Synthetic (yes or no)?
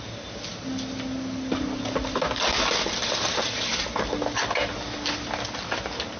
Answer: no